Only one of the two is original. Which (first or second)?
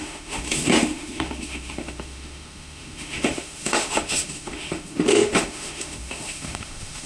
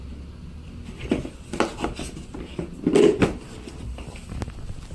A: second